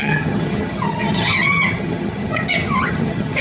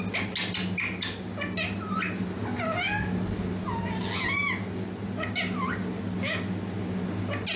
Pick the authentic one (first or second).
second